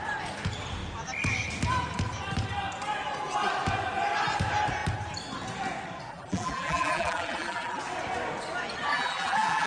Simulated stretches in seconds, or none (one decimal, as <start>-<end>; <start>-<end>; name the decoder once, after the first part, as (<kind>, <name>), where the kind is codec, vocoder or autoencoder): 6.1-7.8 (vocoder, BigVGAN v2); 8.9-9.7